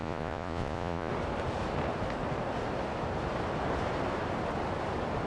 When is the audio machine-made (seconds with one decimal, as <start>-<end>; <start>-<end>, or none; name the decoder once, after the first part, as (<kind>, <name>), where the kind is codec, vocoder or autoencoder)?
0.0-1.1 (vocoder, Vocos)